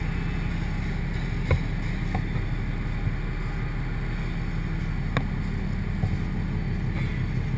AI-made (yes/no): no